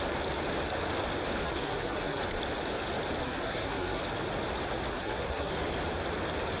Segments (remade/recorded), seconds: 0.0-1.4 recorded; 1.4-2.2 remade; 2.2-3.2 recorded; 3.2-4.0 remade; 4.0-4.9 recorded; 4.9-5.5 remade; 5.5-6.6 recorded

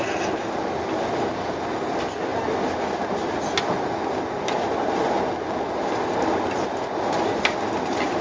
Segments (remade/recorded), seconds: 0.0-8.2 recorded

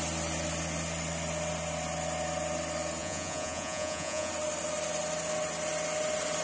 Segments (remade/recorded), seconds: 0.0-3.0 recorded; 3.0-4.3 remade; 4.3-6.4 recorded

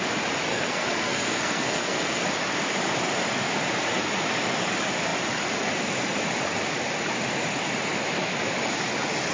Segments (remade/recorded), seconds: 0.0-0.5 recorded; 0.5-2.2 remade; 2.2-9.3 recorded

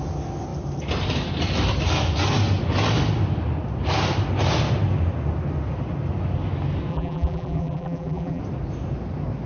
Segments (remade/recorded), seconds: 0.0-6.9 recorded; 6.9-8.4 remade; 8.4-9.5 recorded